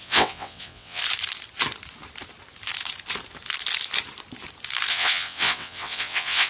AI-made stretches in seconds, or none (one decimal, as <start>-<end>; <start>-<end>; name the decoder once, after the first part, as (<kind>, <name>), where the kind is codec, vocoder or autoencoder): 0.0-1.0 (vocoder, WaveNeXt); 4.9-6.5